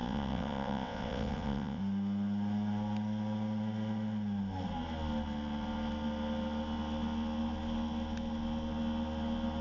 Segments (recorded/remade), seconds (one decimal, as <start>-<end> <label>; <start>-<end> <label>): 0.0-1.8 remade; 1.8-9.6 recorded